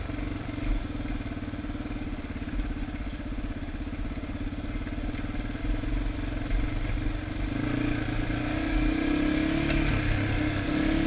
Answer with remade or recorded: recorded